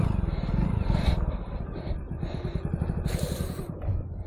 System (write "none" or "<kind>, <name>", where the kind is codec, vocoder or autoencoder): none